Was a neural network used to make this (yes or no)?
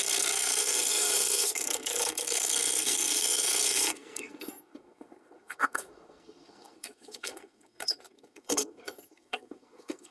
yes